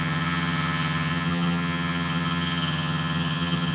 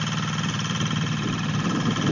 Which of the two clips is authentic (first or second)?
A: second